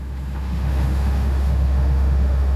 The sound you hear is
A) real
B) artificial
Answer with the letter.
B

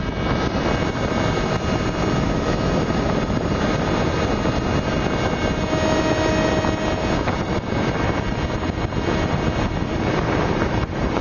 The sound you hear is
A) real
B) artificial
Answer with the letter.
A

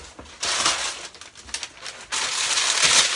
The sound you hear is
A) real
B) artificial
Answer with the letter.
A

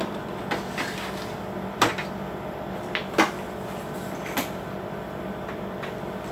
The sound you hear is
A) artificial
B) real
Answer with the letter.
B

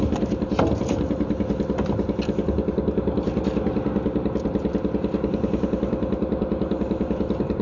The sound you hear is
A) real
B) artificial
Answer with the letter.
A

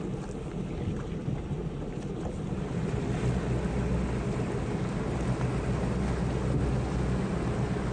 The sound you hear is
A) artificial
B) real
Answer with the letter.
B